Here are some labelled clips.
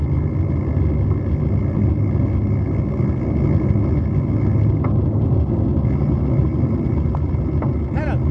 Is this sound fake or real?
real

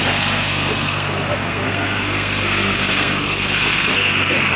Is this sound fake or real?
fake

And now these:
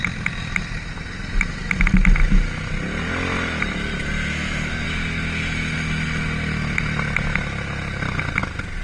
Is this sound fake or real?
real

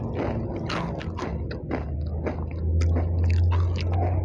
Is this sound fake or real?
real